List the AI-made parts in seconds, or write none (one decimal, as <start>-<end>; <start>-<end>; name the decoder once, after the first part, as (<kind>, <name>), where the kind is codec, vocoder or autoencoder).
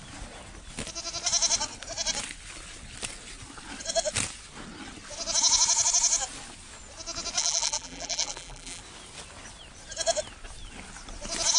7.4-8.8 (vocoder, BigVGAN v2)